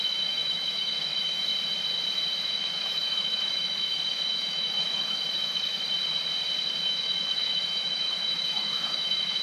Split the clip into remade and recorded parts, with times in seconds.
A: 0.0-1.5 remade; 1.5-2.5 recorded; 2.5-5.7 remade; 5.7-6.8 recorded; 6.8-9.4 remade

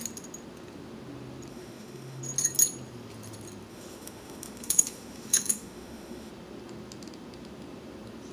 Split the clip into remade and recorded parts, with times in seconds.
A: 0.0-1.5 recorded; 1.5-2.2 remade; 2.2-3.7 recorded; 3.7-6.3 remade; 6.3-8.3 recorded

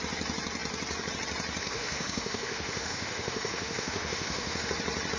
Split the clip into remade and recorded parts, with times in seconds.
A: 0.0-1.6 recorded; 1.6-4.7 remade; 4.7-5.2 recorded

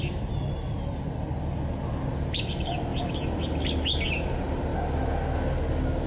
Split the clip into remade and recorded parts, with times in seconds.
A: 0.0-6.1 recorded

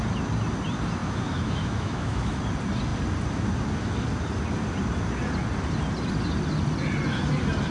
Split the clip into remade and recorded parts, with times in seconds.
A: 0.0-1.0 recorded; 1.0-2.4 remade; 2.4-7.7 recorded